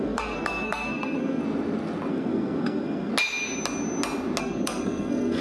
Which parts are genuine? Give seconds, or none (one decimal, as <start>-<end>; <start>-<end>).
1.4-2.1; 3.1-4.4